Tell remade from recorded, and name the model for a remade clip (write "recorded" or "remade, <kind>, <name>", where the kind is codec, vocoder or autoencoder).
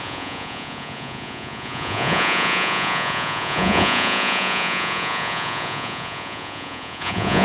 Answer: remade, vocoder, Vocos